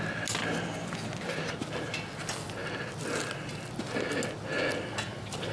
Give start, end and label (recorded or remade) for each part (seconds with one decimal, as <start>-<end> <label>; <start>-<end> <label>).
0.0-5.5 recorded